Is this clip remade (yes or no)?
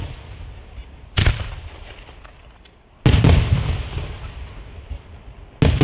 no